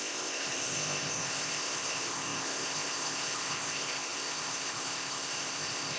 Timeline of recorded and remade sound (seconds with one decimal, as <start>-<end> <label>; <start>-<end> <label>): 0.0-6.0 remade